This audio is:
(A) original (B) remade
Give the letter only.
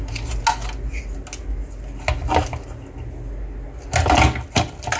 A